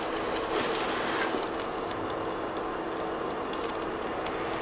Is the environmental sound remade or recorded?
recorded